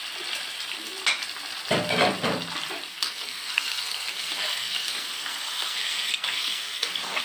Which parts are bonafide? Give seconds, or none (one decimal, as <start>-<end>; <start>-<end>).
0.0-2.9